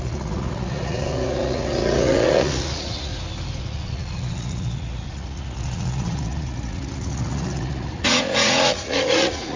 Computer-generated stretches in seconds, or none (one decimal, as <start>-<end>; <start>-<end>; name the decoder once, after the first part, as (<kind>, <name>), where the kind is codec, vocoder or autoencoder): 0.0-3.1 (vocoder, Vocos); 3.6-9.6

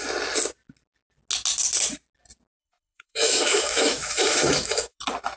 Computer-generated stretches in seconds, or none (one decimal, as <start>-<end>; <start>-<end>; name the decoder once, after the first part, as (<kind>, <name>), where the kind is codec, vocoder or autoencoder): 2.6-5.0 (autoencoder, DAC-VAE)

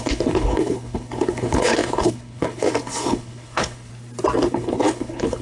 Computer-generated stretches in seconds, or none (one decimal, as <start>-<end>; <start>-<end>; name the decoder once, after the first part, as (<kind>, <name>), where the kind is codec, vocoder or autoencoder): 0.0-3.9 (codec, HILCodec); 4.5-5.4

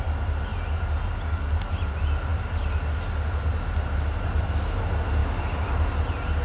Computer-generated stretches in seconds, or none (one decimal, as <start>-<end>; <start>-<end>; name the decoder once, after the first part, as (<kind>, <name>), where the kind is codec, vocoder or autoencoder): none